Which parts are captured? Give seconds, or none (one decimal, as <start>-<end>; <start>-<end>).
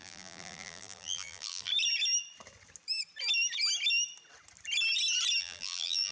1.7-5.4